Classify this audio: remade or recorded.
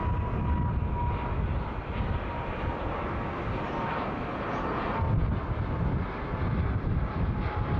recorded